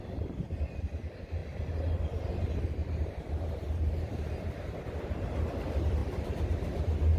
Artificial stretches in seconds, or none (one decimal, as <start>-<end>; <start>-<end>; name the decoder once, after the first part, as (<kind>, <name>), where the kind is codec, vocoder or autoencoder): 2.8-4.0 (vocoder, BigVGAN v2); 6.0-7.2